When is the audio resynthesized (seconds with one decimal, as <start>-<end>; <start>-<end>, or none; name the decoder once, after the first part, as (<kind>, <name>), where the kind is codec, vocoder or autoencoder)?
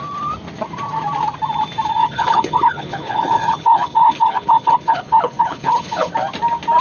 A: 2.0-6.1 (codec, HILCodec)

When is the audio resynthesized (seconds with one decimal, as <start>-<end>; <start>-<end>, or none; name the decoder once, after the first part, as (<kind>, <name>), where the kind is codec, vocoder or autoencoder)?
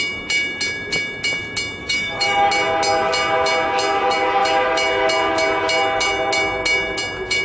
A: 1.8-2.5 (autoencoder, DAC-VAE)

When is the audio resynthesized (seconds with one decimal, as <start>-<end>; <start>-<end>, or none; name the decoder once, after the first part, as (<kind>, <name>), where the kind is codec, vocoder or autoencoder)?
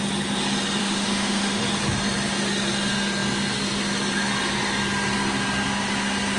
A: 0.8-1.6 (autoencoder, DAC-VAE)